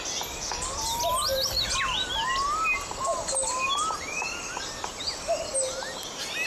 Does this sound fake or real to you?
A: real